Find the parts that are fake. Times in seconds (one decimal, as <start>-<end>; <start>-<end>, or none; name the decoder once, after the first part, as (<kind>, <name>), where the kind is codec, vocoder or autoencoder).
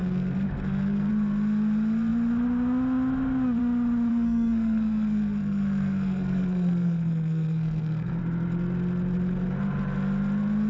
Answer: 0.0-1.1 (codec, SNAC); 4.1-8.2